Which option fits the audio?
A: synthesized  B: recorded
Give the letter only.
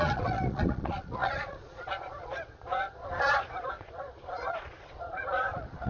A